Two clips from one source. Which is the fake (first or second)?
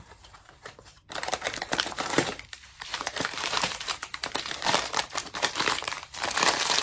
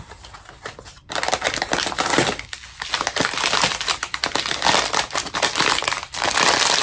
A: first